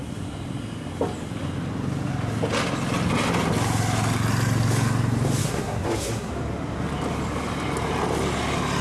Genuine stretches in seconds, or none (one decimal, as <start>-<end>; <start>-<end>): 0.0-5.4; 6.3-8.8